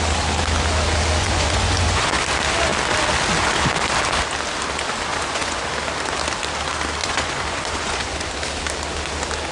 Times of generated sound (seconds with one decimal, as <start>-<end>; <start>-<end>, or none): 1.2-2.2; 5.1-5.6; 7.0-8.3

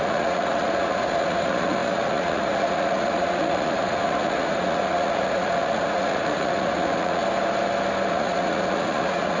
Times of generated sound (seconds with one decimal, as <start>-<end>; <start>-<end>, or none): 0.0-7.2; 8.1-9.4

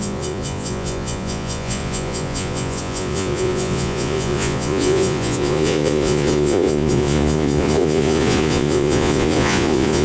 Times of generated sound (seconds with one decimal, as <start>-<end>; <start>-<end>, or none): 0.0-10.0

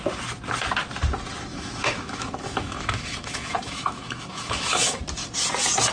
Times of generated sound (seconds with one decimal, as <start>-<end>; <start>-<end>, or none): 1.5-5.0